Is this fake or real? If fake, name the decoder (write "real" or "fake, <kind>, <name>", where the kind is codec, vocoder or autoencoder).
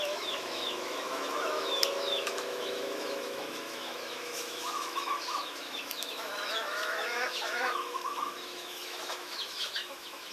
fake, autoencoder, DAC-VAE